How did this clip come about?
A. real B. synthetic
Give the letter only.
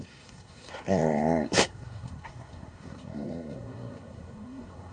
B